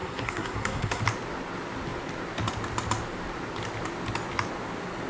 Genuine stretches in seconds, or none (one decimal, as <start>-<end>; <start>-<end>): 1.0-5.1